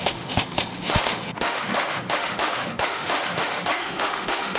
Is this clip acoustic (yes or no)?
no